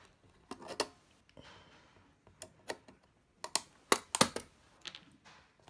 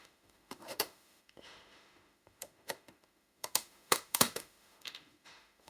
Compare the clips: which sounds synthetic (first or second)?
second